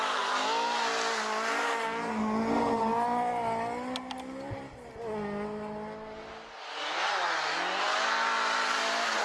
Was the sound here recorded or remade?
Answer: recorded